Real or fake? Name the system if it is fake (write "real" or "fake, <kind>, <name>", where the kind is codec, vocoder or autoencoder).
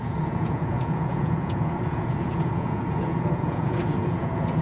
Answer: fake, vocoder, Vocos